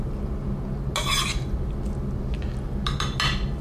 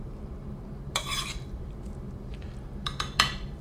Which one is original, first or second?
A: first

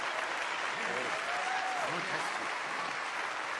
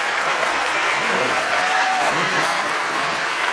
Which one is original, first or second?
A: first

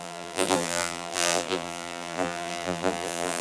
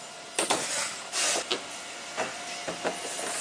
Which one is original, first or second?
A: second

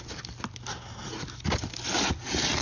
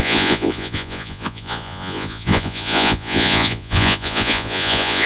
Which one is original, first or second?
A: first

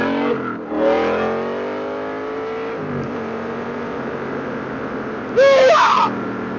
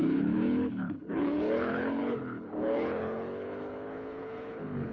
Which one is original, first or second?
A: first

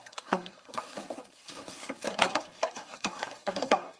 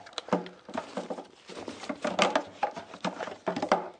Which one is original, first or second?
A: second